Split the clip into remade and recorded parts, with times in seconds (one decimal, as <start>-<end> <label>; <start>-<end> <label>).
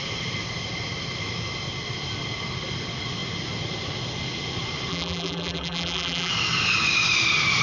0.0-4.9 recorded; 4.9-6.3 remade; 6.3-7.6 recorded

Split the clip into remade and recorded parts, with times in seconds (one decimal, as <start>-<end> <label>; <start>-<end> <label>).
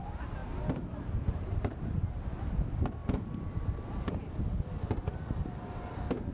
0.0-6.3 recorded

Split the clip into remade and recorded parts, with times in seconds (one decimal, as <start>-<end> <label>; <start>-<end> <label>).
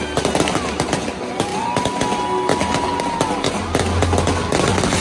0.0-5.0 recorded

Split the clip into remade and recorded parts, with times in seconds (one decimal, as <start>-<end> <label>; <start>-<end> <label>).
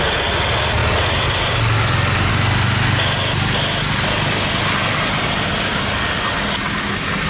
0.0-7.3 recorded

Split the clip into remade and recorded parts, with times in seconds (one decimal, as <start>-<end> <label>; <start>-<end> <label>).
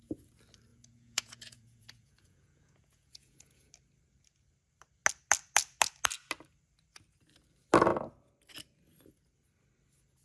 0.0-0.7 recorded; 0.7-3.7 remade; 3.7-10.2 recorded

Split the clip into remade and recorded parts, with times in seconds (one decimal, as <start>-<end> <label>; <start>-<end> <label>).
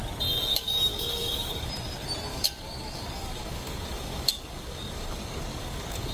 0.0-0.5 recorded; 0.5-1.7 remade; 1.7-2.3 recorded; 2.3-6.1 remade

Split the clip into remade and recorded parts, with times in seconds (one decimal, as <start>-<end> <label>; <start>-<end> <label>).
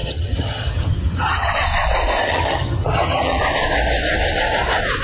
0.0-1.5 remade; 1.5-2.2 recorded; 2.2-3.4 remade; 3.4-5.0 recorded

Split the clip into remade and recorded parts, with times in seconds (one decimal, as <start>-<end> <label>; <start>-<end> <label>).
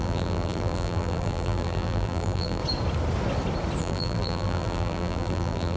0.0-2.6 remade; 2.6-3.8 recorded; 3.8-5.8 remade